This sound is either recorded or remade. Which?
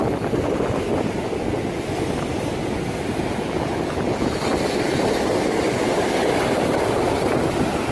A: recorded